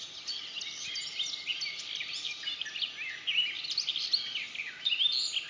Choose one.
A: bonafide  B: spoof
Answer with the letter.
A